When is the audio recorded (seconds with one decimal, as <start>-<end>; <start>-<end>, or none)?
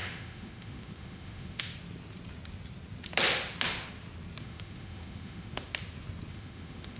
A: 1.7-4.4; 5.7-6.3